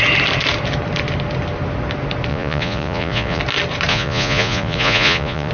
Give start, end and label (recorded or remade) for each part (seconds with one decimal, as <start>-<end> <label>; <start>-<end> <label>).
0.0-2.3 recorded; 2.3-3.4 remade; 3.4-3.9 recorded; 3.9-5.5 remade